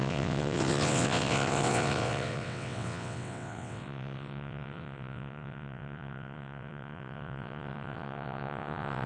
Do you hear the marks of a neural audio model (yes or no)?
yes